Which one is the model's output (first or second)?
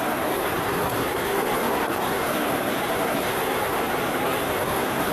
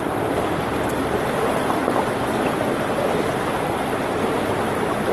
first